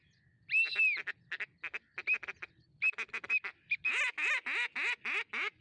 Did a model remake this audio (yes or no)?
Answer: no